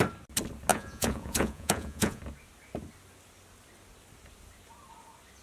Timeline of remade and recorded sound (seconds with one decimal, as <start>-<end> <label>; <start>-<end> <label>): 0.0-0.7 recorded; 0.7-2.2 remade; 2.2-5.4 recorded